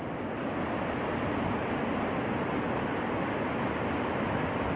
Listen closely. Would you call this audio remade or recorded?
recorded